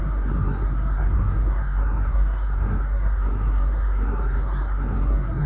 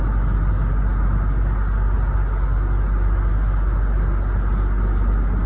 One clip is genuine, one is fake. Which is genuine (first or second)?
second